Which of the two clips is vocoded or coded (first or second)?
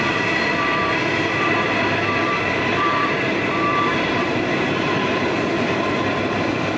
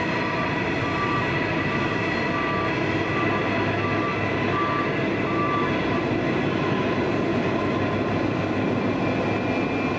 first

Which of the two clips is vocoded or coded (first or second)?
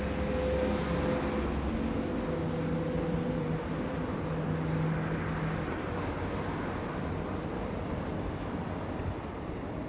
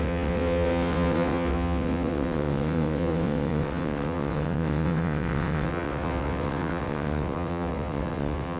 second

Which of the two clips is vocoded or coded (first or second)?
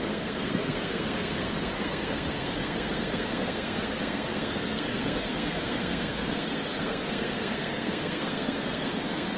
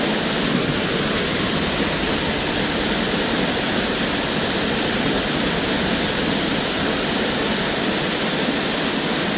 first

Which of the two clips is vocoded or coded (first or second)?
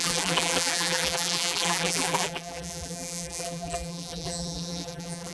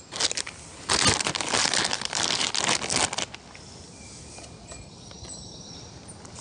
first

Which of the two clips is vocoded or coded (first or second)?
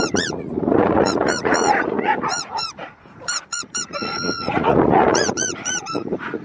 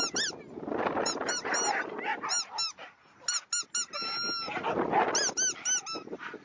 first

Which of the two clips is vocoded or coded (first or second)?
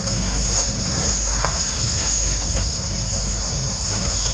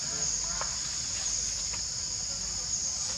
first